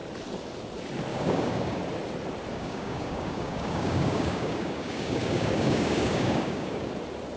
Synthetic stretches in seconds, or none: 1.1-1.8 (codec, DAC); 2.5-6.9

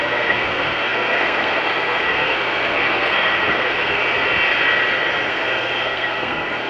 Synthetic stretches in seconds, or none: 0.0-4.0 (codec, SNAC); 5.3-6.7